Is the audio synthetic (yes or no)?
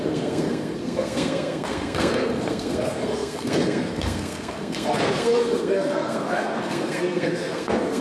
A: yes